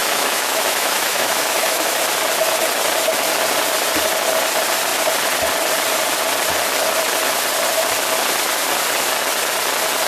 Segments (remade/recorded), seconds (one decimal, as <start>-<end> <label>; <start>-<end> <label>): 0.0-2.0 remade; 2.0-10.1 recorded